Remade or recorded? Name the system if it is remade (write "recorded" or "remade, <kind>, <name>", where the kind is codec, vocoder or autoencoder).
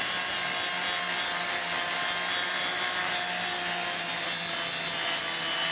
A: recorded